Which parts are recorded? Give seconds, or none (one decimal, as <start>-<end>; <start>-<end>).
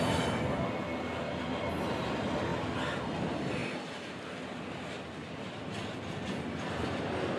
0.0-7.4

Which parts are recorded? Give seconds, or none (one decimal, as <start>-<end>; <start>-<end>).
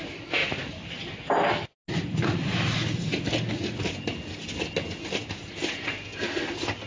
0.0-6.9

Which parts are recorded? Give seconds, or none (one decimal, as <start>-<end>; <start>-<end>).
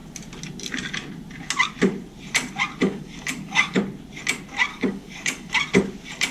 0.0-2.8; 3.8-4.7; 5.5-6.3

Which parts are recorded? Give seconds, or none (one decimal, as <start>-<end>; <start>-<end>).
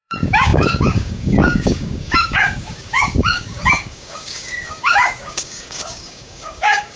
none